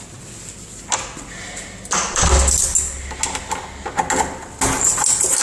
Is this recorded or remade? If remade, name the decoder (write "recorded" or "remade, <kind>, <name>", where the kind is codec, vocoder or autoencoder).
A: recorded